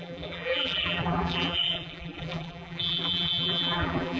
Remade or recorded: remade